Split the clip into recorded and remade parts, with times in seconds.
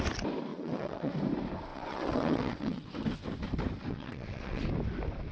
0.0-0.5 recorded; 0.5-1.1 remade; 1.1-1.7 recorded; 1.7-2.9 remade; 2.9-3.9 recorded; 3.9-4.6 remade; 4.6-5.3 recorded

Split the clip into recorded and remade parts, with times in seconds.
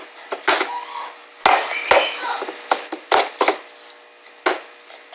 0.0-5.1 recorded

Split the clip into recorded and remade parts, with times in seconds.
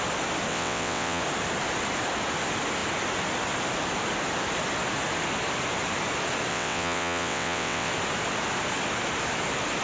0.0-0.5 recorded; 0.5-1.2 remade; 1.2-6.5 recorded; 6.5-7.9 remade; 7.9-9.8 recorded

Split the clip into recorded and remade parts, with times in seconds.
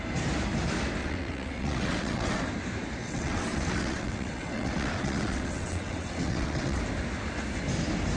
0.0-1.0 recorded; 1.0-2.4 remade; 2.4-3.0 recorded; 3.0-6.8 remade; 6.8-8.2 recorded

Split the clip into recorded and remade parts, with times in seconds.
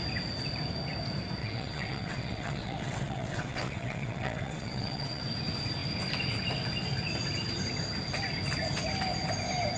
0.0-1.4 recorded; 1.4-5.2 remade; 5.2-9.8 recorded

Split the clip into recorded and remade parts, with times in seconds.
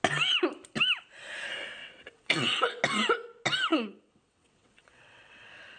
0.0-1.8 recorded; 1.8-2.8 remade; 2.8-3.7 recorded; 3.7-5.8 remade